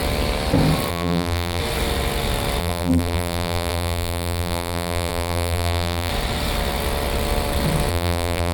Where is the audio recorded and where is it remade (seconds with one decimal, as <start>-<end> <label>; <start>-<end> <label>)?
0.0-0.9 recorded; 0.9-1.6 remade; 1.6-2.6 recorded; 2.6-6.1 remade; 6.1-7.9 recorded; 7.9-8.5 remade